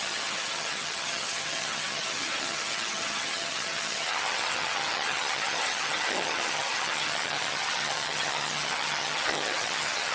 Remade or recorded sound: remade